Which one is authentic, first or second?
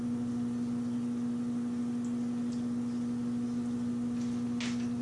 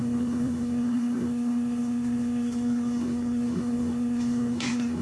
first